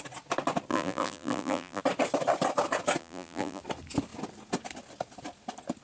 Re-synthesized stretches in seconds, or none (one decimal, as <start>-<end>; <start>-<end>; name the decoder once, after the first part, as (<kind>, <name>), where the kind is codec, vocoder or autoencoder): 0.7-1.8 (vocoder, BigVGAN v2); 3.0-3.6